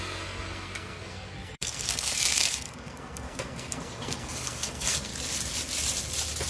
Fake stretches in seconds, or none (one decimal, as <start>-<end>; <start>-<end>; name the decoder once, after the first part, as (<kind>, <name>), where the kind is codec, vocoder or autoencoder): 0.0-5.1 (codec, SNAC)

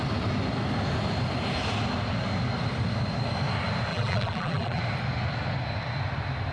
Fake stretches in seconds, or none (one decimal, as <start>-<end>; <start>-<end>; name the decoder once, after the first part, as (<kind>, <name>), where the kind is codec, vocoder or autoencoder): 3.9-4.8 (vocoder, BigVGAN v2)

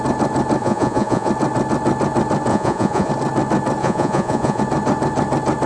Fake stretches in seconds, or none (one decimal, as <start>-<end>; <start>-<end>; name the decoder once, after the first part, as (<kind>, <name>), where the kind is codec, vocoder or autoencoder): 0.6-1.3 (vocoder, Vocos); 2.5-3.1; 3.8-4.6

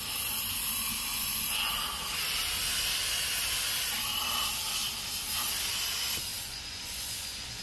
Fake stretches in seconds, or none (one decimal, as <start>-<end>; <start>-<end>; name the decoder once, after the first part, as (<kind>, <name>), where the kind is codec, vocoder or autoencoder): 1.1-1.7 (vocoder, Vocos); 6.3-7.6